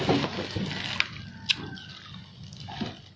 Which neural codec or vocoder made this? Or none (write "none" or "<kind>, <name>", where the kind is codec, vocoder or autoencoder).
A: none